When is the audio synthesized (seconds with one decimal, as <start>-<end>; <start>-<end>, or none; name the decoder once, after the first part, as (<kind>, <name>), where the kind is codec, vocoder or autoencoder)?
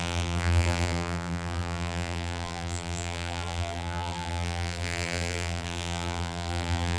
0.0-7.0 (vocoder, BigVGAN v2)